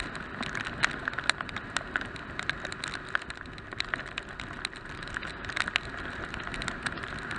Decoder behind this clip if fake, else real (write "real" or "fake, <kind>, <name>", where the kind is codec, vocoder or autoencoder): real